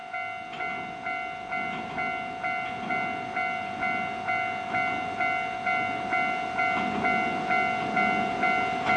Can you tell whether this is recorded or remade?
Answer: recorded